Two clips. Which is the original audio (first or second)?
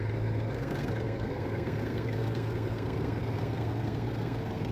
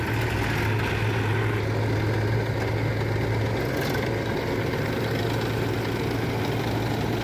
second